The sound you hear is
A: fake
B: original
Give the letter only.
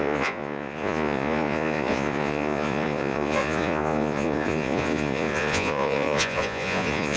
A